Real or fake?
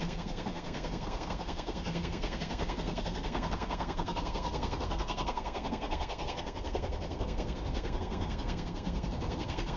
fake